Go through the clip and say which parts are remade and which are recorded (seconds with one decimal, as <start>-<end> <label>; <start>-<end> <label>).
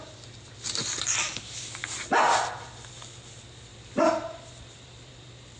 0.0-3.7 recorded; 3.7-5.6 remade